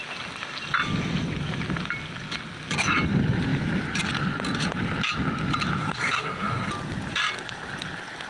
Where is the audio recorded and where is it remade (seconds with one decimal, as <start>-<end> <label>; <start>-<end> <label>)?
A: 0.0-5.8 recorded; 5.8-6.7 remade; 6.7-8.3 recorded